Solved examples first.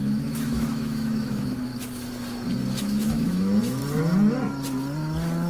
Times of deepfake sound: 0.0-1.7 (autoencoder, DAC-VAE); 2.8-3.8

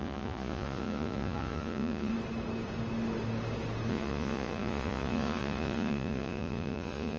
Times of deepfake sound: 0.0-2.1 (vocoder, Vocos); 3.9-7.2

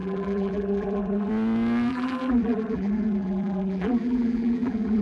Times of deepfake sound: 0.0-1.3 (vocoder, BigVGAN v2); 1.9-5.0

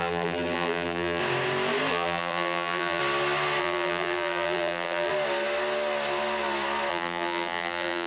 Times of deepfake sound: 0.0-1.2 (vocoder, BigVGAN v2); 1.9-3.0; 3.6-5.1; 6.9-8.1

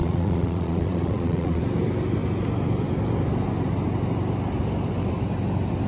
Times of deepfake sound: 0.0-1.6 (vocoder, Vocos)

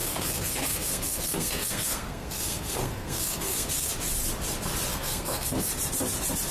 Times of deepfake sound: 0.0-3.9 (codec, SNAC); 4.9-5.7

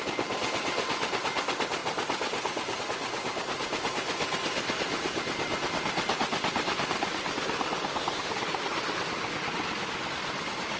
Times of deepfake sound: none